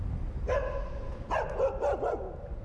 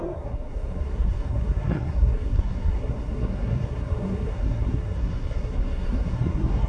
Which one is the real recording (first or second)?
first